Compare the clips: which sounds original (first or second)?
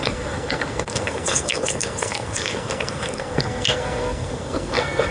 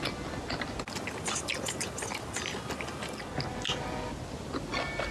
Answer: second